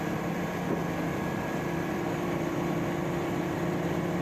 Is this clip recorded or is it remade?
remade